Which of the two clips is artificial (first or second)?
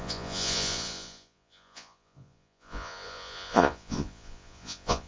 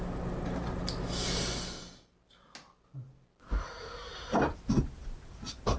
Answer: first